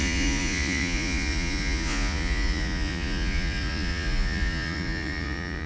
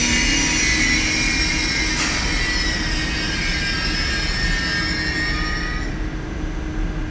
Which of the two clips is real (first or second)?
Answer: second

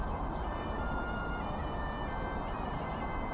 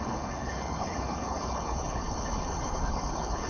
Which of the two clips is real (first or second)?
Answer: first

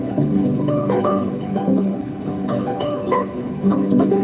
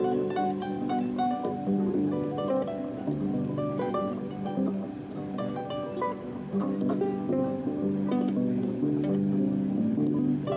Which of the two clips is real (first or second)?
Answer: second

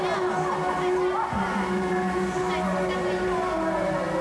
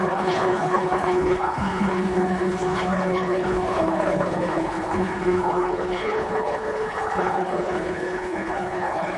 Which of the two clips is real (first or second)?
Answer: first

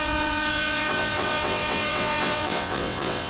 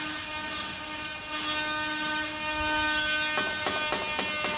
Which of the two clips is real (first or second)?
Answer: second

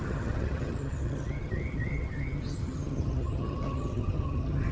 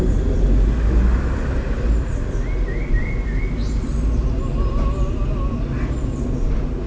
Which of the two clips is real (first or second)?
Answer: second